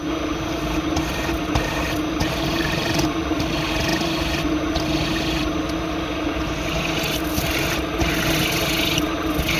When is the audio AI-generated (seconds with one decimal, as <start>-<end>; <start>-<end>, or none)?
2.2-3.5